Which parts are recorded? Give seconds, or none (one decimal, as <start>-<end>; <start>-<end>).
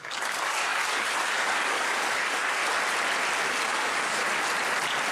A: 2.6-3.5; 4.2-5.1